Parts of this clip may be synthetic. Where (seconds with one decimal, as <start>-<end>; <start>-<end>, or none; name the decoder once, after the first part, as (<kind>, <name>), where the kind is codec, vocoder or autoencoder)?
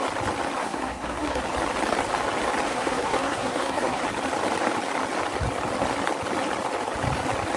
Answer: 0.6-1.4 (codec, SNAC); 2.7-4.0